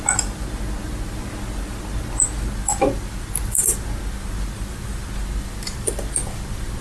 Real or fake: real